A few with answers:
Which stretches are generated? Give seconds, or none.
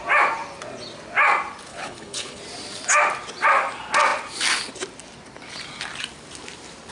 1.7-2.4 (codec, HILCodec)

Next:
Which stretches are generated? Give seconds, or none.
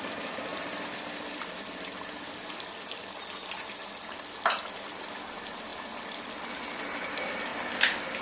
0.5-3.1 (vocoder, BigVGAN v2)